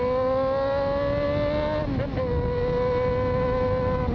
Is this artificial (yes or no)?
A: no